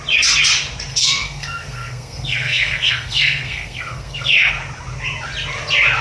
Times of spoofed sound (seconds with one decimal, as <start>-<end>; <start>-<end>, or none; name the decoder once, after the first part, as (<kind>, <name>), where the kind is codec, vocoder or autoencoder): 0.9-4.5 (codec, SNAC)